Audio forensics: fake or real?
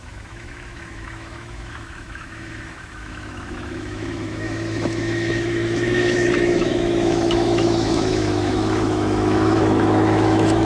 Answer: fake